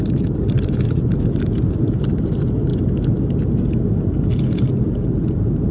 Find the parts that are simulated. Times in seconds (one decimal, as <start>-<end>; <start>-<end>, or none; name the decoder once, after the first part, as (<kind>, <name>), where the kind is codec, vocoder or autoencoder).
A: 0.0-2.7 (vocoder, BigVGAN v2); 4.9-5.7